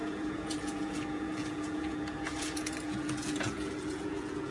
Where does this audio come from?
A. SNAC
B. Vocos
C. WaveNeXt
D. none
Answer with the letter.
B